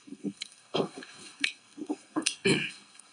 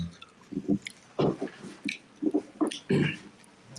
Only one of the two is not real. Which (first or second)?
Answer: first